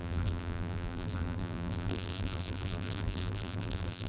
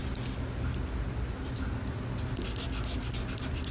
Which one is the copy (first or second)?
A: first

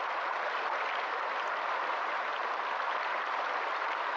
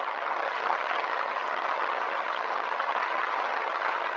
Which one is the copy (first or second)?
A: second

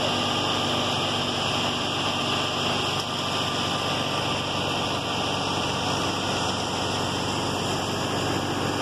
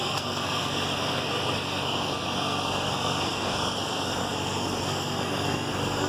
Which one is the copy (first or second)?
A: second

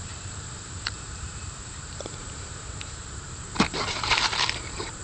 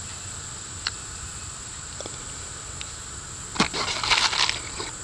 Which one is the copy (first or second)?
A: first